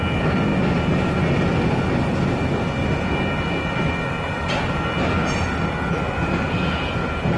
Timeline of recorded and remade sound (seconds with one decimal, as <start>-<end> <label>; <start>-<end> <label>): 0.0-7.4 recorded